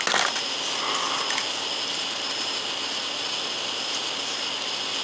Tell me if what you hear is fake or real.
real